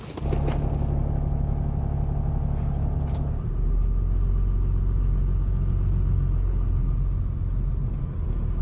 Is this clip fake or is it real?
real